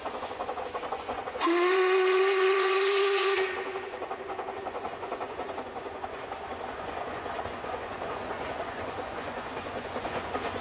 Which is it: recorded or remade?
remade